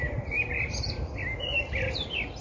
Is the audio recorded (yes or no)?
yes